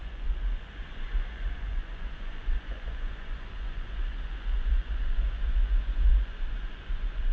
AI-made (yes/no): yes